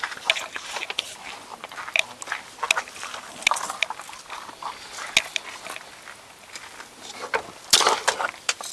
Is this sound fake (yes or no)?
no